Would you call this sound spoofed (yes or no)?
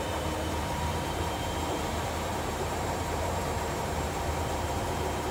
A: yes